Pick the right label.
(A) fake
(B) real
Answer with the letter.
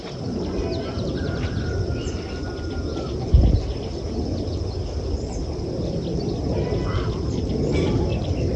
B